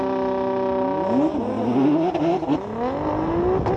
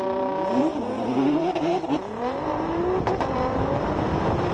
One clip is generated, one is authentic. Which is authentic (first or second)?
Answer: first